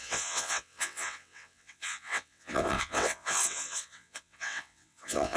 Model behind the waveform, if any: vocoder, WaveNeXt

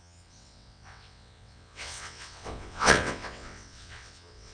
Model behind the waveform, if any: vocoder, WaveNeXt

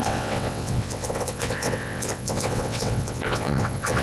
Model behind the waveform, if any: vocoder, WaveNeXt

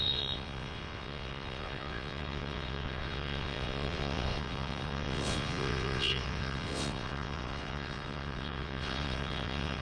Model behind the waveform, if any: vocoder, WaveNeXt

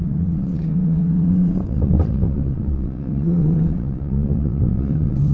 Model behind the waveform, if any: vocoder, WaveNeXt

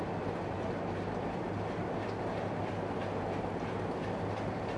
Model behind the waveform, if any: none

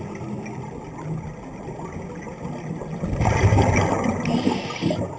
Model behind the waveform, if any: none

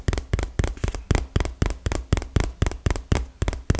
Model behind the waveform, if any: none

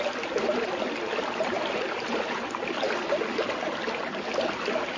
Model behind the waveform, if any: none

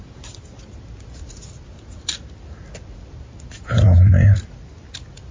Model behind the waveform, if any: none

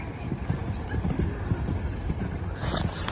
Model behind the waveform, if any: none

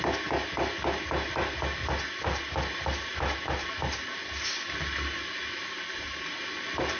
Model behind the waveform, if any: none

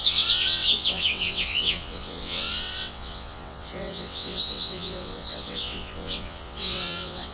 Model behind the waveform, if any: vocoder, WaveNeXt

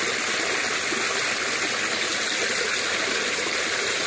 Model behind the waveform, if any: none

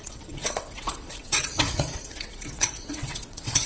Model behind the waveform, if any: vocoder, WaveNeXt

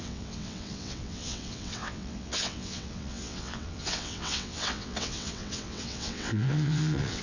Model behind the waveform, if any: vocoder, WaveNeXt